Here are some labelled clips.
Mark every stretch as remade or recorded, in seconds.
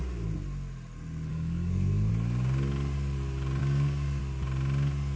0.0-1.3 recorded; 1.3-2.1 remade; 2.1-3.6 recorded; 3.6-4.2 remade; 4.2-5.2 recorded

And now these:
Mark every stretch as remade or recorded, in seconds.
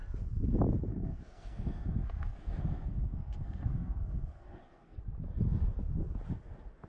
0.0-0.9 recorded; 0.9-5.0 remade; 5.0-6.9 recorded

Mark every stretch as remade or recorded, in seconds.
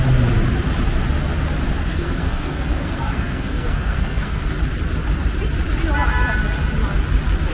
0.0-1.9 recorded; 1.9-4.5 remade; 4.5-7.5 recorded